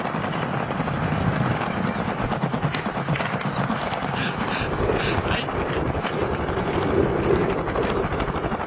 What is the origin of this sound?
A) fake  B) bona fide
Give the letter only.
B